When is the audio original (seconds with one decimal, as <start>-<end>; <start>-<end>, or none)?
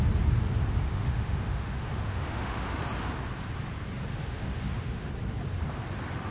0.0-0.9; 2.8-4.2; 5.1-6.3